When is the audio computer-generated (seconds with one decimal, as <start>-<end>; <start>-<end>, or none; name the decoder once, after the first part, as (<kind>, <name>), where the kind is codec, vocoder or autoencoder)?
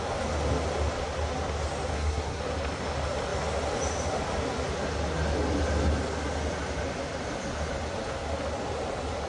1.9-2.4 (codec, SNAC)